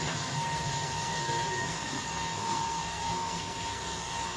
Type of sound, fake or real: fake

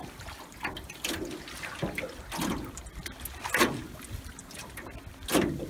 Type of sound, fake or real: real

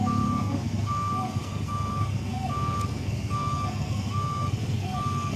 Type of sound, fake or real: fake